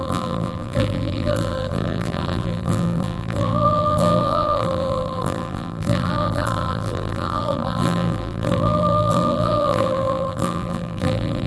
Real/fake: fake